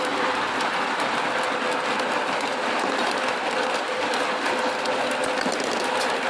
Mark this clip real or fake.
real